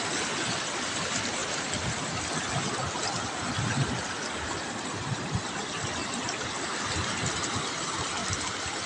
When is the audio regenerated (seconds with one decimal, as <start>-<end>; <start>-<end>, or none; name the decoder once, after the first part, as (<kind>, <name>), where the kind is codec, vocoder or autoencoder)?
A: none